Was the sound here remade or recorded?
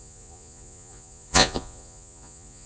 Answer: remade